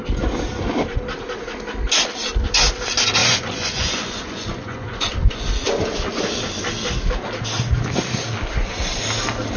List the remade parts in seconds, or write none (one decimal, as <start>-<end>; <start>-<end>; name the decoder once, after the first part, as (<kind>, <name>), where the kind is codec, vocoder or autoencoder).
3.2-5.4 (vocoder, Vocos)